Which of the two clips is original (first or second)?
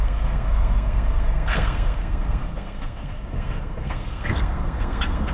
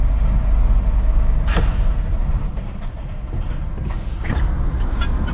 second